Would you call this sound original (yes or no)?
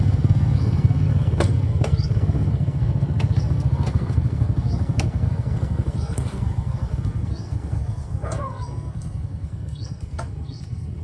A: no